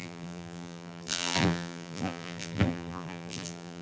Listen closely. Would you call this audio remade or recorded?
remade